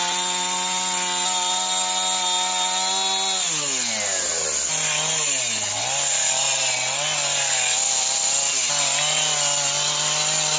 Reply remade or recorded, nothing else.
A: recorded